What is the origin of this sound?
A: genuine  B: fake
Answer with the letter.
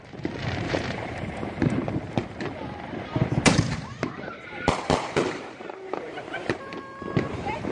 B